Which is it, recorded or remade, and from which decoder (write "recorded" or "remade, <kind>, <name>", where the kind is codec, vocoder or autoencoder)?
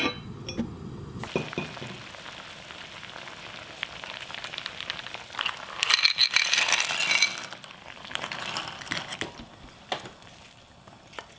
recorded